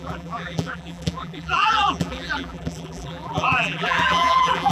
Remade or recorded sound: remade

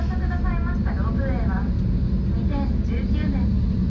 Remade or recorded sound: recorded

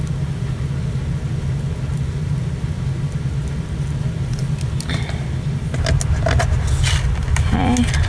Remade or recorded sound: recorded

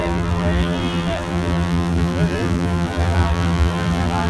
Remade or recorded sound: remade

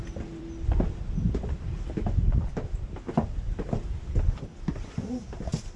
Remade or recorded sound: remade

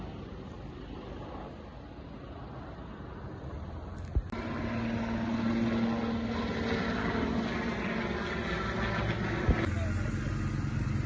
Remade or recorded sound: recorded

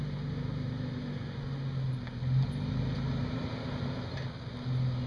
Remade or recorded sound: recorded